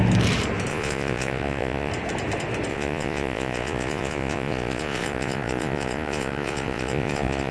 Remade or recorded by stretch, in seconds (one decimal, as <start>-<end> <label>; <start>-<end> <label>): 0.0-0.7 recorded; 0.7-1.9 remade; 1.9-2.7 recorded; 2.7-7.5 remade